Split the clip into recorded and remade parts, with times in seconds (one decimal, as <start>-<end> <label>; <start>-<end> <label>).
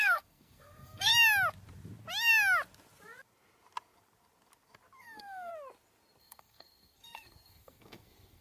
0.0-1.1 remade; 1.1-5.0 recorded; 5.0-5.5 remade; 5.5-6.2 recorded; 6.2-8.4 remade